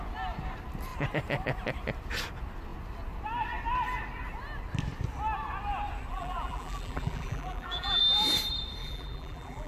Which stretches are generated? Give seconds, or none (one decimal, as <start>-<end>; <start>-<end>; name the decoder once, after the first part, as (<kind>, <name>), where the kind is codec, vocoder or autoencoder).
6.1-8.0 (vocoder, BigVGAN v2); 8.8-9.7